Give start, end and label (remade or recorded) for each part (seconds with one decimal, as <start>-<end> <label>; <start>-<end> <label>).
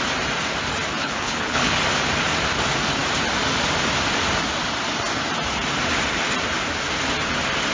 0.0-1.0 recorded; 1.0-1.8 remade; 1.8-7.7 recorded